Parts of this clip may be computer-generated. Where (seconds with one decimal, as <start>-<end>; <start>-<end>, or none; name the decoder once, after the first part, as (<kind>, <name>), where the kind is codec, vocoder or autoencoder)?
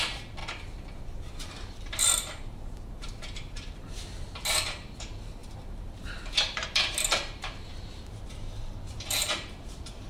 0.0-0.4 (vocoder, BigVGAN v2); 1.4-10.1